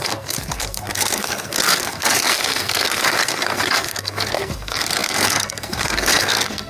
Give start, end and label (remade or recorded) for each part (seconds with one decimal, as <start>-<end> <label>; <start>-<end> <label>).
0.0-6.7 remade